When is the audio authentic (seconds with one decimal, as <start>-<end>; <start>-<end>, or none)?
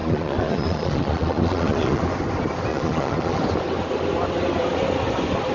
2.0-2.7; 3.4-5.5